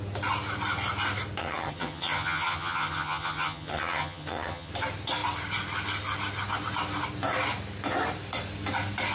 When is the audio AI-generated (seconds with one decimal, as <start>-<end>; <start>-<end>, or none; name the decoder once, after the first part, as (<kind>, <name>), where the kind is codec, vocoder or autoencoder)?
1.4-4.7 (vocoder, HiFi-GAN)